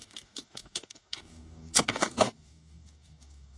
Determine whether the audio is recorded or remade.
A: remade